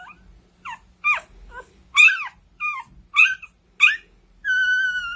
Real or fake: real